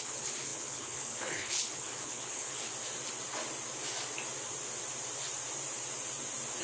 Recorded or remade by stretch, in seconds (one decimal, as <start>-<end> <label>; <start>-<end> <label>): 0.0-2.7 remade; 2.7-6.6 recorded